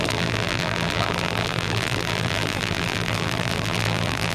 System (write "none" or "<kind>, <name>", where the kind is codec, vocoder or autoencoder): vocoder, BigVGAN v2